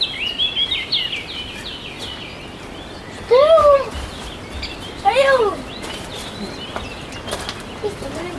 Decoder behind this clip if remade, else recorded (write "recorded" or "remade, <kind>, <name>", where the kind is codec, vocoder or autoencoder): recorded